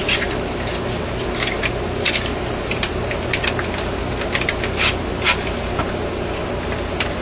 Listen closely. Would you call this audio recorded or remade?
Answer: recorded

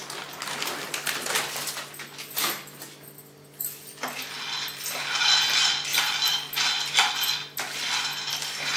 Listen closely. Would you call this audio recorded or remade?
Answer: recorded